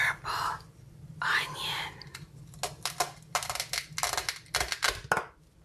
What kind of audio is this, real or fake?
real